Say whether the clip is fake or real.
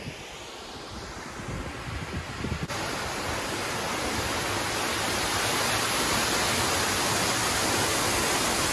real